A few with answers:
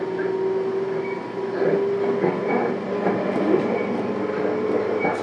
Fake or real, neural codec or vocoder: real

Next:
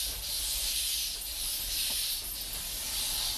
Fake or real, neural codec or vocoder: real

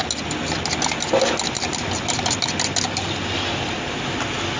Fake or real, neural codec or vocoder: real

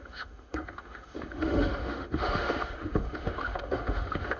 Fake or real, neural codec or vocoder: fake, autoencoder, DAC-VAE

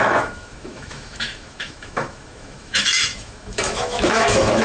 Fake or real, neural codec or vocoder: fake, autoencoder, DAC-VAE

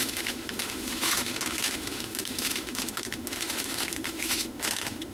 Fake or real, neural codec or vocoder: fake, autoencoder, DAC-VAE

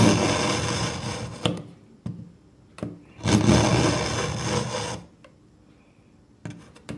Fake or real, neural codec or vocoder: real